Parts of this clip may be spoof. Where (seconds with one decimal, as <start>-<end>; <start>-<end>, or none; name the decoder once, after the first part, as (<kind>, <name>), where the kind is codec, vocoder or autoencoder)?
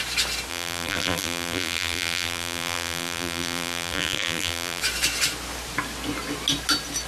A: 0.5-4.8 (vocoder, BigVGAN v2)